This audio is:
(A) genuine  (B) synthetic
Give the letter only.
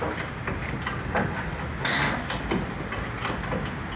A